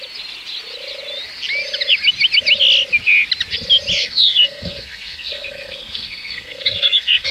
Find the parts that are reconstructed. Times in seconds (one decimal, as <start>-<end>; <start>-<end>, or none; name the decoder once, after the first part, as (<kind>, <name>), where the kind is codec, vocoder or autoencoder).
4.0-7.3 (codec, SNAC)